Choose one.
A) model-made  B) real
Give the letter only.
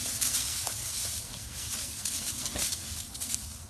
A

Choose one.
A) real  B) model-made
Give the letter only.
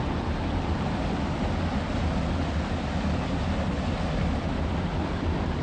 A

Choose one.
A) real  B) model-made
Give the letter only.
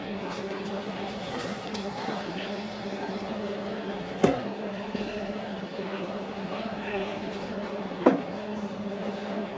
B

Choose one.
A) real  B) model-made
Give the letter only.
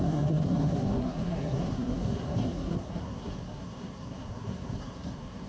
B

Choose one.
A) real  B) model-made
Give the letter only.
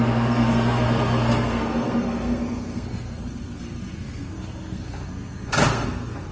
B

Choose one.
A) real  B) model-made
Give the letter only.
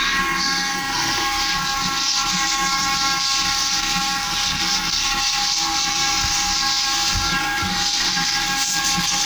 B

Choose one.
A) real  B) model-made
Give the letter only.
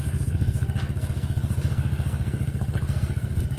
B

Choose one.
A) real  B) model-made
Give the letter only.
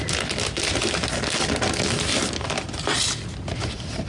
A